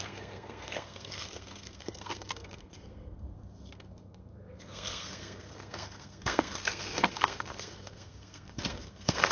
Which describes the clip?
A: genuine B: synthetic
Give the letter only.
B